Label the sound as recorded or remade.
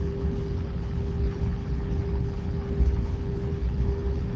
remade